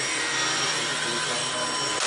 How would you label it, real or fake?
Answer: real